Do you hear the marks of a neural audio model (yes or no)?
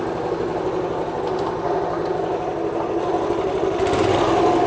no